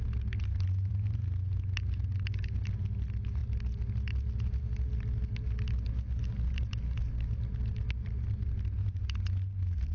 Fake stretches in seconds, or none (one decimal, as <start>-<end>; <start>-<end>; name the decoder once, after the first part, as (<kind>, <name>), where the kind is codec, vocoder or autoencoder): none